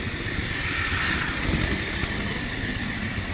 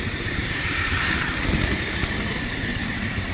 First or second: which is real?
first